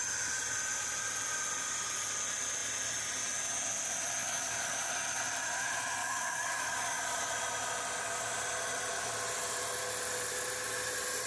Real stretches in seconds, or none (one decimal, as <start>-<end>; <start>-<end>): 0.0-4.2; 4.9-6.0; 7.3-11.3